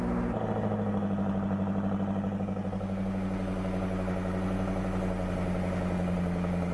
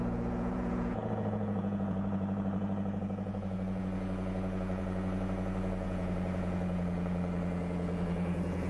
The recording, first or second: first